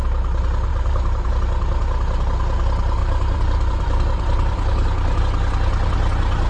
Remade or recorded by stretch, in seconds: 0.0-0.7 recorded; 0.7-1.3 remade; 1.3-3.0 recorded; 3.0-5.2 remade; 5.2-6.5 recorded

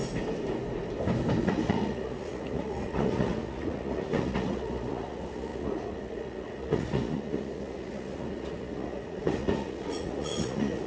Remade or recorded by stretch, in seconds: 0.0-1.4 recorded; 1.4-10.9 remade